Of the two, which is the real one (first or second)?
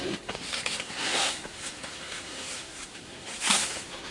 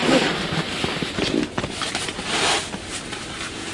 second